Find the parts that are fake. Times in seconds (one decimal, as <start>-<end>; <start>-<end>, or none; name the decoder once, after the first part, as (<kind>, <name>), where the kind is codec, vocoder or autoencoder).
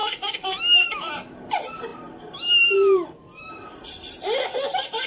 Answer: 0.0-1.1 (autoencoder, DAC-VAE)